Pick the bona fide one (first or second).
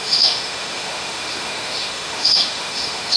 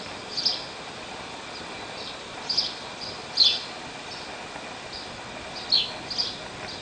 second